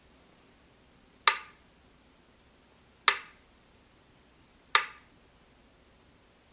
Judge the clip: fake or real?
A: real